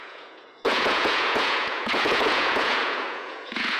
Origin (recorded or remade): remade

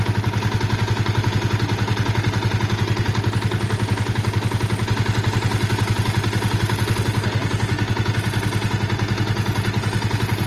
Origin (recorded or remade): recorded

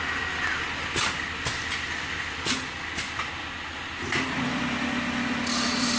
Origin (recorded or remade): recorded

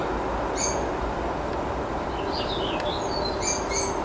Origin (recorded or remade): recorded